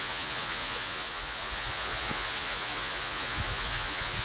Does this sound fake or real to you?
fake